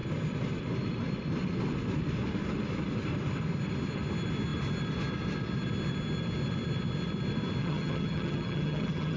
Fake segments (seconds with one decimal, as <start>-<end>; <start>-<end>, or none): 7.6-9.2